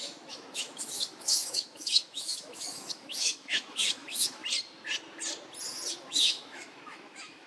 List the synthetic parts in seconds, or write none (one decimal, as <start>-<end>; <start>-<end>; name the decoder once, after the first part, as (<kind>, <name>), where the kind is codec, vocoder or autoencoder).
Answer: 0.0-4.4 (autoencoder, DAC-VAE); 6.0-7.5